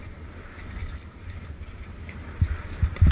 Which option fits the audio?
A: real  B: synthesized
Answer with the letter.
B